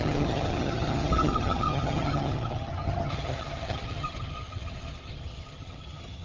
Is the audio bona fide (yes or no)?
no